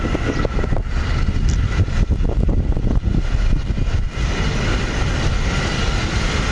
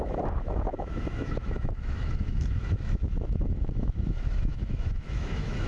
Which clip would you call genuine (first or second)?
first